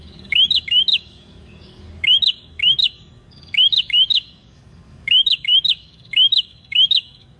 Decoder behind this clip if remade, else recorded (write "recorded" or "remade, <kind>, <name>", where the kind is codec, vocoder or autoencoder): remade, codec, DAC